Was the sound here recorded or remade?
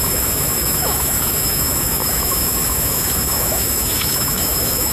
remade